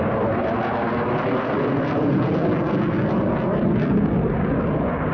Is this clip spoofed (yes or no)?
no